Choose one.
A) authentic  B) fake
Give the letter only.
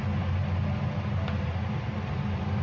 A